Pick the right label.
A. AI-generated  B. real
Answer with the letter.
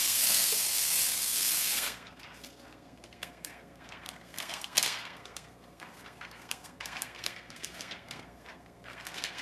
A